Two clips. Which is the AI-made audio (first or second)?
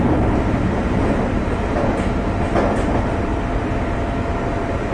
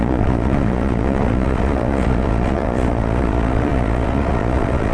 second